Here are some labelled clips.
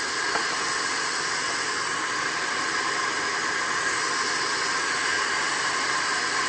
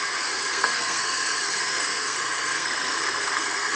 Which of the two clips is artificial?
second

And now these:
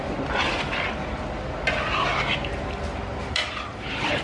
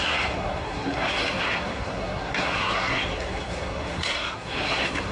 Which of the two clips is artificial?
second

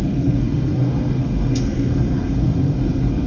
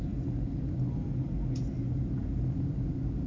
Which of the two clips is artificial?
first